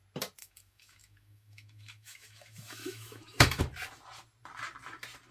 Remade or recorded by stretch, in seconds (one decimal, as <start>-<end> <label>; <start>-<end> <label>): 0.0-0.4 recorded; 0.4-3.6 remade; 3.6-5.3 recorded